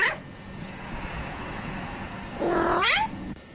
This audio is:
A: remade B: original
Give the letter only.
A